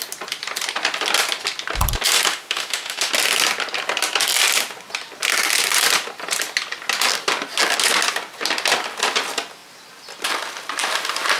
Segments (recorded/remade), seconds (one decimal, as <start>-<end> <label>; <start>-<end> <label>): 0.0-2.3 recorded; 2.3-3.1 remade; 3.1-11.4 recorded